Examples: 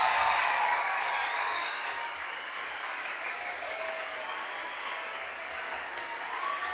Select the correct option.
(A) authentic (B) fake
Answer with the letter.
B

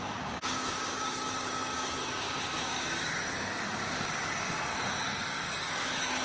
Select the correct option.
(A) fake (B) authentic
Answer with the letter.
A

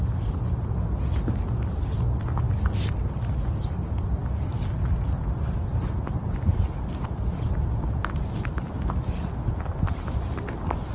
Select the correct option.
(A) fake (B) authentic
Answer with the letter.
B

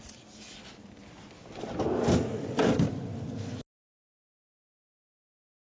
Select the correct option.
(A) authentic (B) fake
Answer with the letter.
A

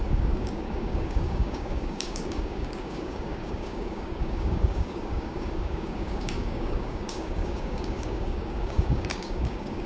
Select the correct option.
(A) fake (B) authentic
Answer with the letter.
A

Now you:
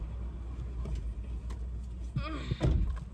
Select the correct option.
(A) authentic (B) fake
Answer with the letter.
A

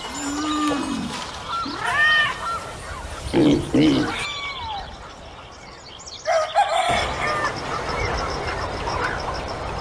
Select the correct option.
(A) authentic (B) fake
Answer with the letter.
A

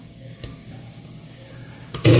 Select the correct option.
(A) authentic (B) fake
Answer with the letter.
B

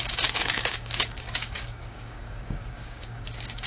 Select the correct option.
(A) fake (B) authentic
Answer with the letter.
A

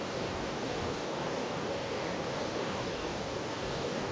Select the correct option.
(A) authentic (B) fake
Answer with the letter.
B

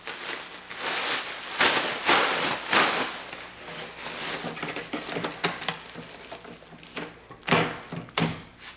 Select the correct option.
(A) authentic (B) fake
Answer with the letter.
A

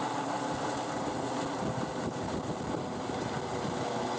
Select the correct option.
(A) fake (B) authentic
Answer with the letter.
B